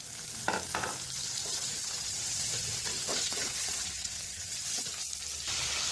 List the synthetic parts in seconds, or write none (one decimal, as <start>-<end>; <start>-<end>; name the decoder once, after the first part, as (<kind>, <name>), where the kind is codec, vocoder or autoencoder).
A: 1.4-4.9 (vocoder, WaveNeXt)